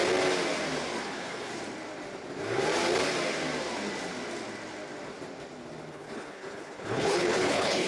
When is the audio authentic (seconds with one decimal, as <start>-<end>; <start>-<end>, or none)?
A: 0.0-1.0; 1.5-5.9